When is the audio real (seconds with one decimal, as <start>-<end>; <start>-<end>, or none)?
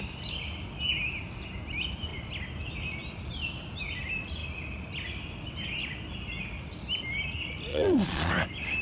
0.0-7.7; 8.3-8.8